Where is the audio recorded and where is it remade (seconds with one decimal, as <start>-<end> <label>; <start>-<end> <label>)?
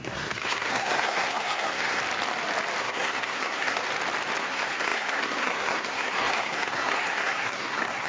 0.0-2.0 remade; 2.0-2.8 recorded; 2.8-3.8 remade; 3.8-4.4 recorded; 4.4-8.1 remade